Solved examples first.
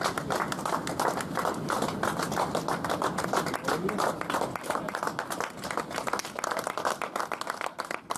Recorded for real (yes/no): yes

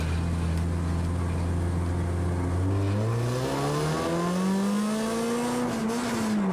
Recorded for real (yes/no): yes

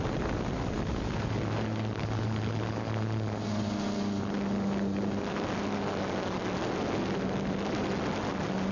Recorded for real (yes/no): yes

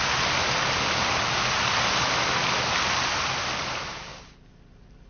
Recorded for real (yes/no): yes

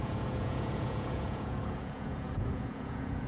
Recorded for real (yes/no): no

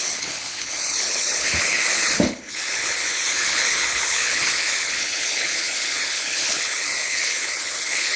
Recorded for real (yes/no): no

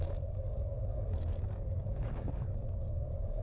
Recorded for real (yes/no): no